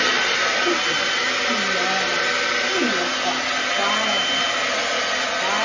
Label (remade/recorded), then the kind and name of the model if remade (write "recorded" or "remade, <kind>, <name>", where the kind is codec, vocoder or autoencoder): recorded